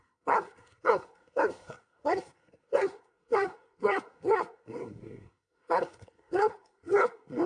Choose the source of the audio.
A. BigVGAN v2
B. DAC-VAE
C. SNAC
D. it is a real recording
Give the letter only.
C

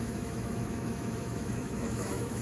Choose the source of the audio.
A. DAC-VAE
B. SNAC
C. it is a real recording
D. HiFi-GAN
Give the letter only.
A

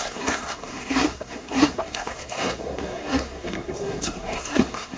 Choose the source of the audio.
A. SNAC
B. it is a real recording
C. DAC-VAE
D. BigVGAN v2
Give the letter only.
A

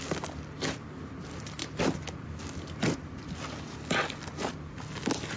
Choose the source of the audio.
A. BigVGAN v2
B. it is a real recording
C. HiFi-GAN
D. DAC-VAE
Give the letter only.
B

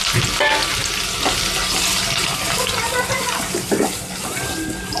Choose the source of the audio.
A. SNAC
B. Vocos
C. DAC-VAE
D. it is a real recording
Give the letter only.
D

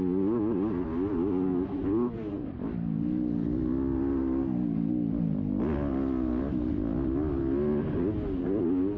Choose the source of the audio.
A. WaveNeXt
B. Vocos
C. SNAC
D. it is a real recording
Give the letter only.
D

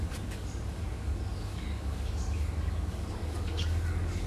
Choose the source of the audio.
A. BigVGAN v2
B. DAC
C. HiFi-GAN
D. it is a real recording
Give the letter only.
B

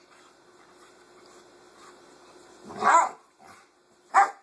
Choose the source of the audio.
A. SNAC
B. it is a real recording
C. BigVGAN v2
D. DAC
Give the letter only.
B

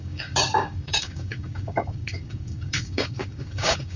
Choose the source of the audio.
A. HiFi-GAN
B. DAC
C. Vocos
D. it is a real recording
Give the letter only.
B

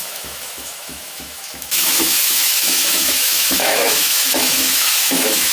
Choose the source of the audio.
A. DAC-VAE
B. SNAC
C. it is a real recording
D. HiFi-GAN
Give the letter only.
A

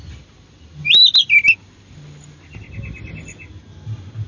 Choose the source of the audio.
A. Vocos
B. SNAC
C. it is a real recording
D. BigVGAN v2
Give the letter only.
C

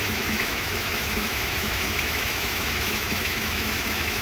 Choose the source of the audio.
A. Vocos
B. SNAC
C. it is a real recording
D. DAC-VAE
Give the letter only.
D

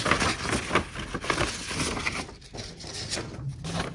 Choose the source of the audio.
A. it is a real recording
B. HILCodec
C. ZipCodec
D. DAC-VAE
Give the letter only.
A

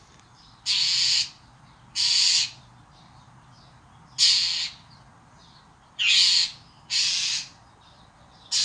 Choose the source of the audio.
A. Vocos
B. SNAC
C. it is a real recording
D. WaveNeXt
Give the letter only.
C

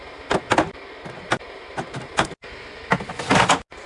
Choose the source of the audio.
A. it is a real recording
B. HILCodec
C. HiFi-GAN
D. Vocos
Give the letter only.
A